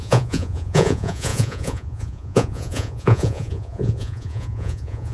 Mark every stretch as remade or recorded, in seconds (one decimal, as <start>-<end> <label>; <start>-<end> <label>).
0.0-5.1 remade